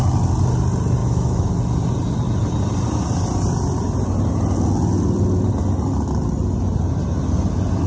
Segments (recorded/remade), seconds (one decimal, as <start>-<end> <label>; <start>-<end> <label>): 0.0-1.0 recorded; 1.0-1.5 remade; 1.5-7.9 recorded